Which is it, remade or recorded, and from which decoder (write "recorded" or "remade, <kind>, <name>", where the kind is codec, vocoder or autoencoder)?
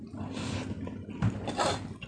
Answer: recorded